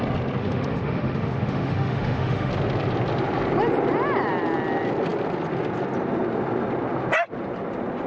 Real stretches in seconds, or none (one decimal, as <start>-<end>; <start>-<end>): 0.0-0.4; 2.5-8.1

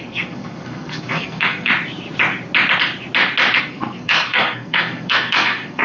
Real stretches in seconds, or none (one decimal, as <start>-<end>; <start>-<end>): 1.7-3.6